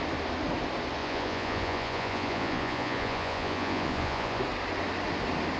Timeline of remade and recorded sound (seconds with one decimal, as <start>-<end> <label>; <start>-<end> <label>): 0.0-1.0 recorded; 1.0-4.4 remade; 4.4-5.6 recorded